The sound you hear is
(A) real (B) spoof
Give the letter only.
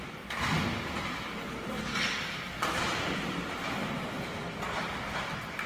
A